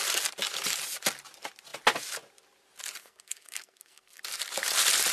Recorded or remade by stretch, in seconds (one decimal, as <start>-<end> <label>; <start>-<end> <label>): 0.0-3.0 recorded; 3.0-4.2 remade; 4.2-5.1 recorded